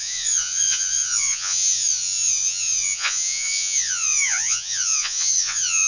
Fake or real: fake